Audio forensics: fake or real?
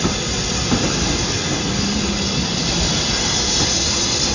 real